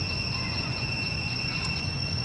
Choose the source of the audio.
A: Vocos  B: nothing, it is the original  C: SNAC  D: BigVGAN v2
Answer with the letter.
A